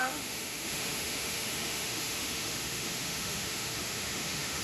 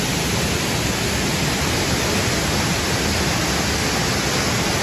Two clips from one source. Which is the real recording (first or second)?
second